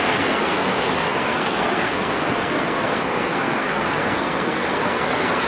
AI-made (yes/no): yes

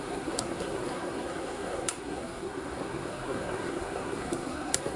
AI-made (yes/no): yes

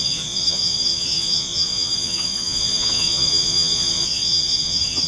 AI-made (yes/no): yes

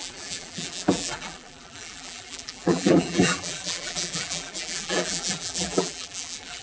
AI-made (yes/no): yes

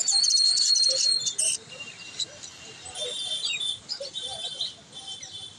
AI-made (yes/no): yes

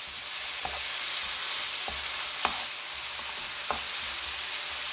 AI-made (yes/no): no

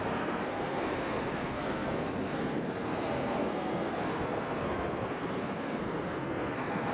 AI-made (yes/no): yes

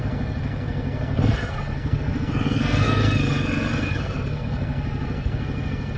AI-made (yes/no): yes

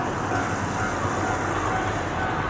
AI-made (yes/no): no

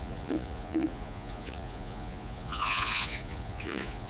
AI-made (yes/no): yes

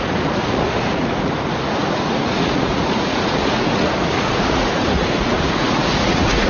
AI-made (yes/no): yes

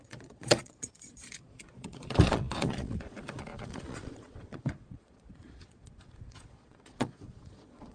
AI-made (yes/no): yes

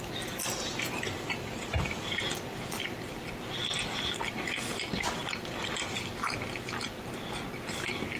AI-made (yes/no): no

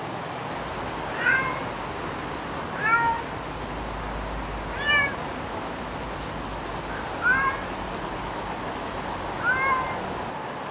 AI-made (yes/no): no